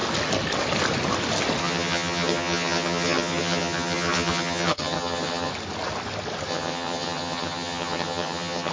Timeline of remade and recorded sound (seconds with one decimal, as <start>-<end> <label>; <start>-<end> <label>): 0.0-1.6 recorded; 1.6-5.5 remade; 5.5-6.5 recorded; 6.5-8.7 remade